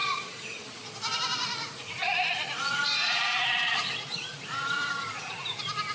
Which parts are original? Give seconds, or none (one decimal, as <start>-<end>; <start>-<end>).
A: 0.6-1.4; 4.9-5.9